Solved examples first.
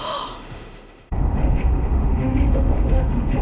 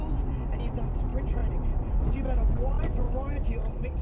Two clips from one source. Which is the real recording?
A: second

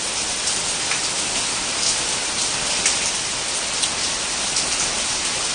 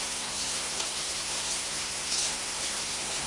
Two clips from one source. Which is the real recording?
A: first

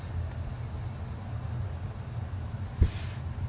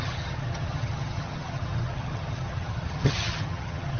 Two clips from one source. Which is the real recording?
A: first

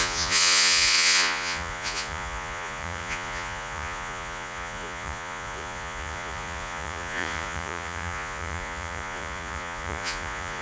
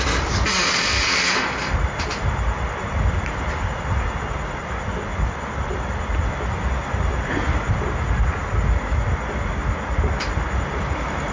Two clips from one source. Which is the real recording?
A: second